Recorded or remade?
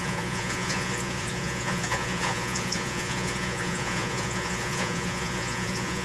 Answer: remade